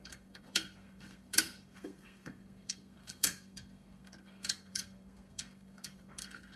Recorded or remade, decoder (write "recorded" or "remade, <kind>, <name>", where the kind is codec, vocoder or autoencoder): remade, codec, SNAC